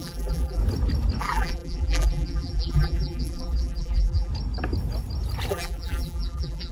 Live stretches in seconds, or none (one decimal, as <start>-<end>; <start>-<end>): 0.6-1.2; 4.3-5.5